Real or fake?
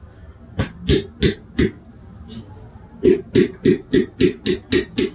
real